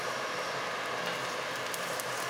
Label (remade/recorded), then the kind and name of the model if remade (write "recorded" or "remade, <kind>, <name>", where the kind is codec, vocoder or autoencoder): recorded